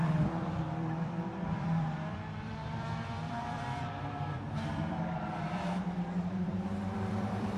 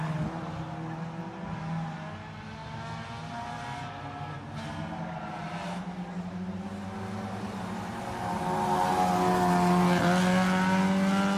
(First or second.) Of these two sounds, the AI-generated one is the first